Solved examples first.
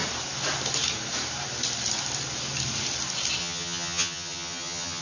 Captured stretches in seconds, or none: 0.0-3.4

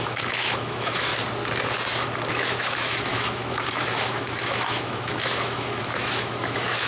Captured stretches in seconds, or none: 1.1-2.3